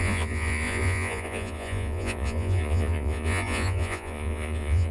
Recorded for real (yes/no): no